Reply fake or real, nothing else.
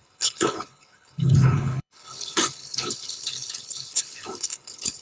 fake